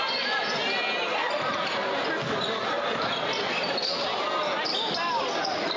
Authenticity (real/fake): real